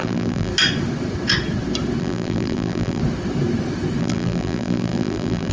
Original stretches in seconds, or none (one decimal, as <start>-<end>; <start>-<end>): 0.5-2.0; 3.0-4.0